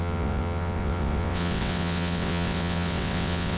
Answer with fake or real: fake